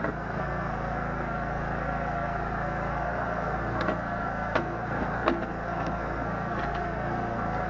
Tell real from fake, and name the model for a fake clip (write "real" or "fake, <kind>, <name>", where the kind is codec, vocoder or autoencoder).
fake, codec, SNAC